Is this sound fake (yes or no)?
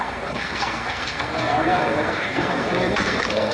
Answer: yes